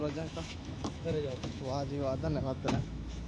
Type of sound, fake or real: fake